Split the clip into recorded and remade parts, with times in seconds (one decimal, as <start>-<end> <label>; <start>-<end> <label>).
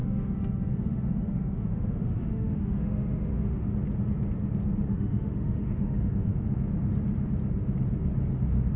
0.0-3.7 remade; 3.7-4.9 recorded; 4.9-6.3 remade; 6.3-8.8 recorded